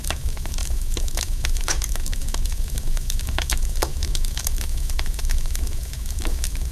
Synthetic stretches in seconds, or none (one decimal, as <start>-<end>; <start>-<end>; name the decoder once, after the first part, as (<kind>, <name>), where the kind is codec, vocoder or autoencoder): 0.0-6.7 (autoencoder, DAC-VAE)